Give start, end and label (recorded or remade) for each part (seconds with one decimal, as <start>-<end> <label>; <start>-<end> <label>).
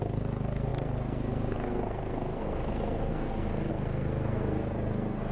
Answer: 0.0-5.3 remade